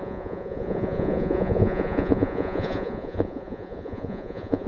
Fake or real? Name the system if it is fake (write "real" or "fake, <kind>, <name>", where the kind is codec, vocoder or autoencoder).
fake, vocoder, Vocos